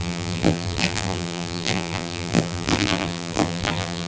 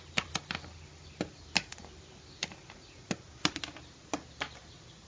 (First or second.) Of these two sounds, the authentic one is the second